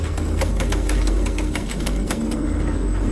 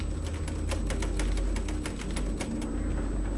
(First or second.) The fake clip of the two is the first